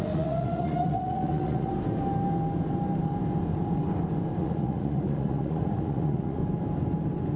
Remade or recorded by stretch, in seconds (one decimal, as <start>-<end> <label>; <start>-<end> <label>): 0.0-1.7 remade; 1.7-4.4 recorded; 4.4-6.4 remade; 6.4-7.4 recorded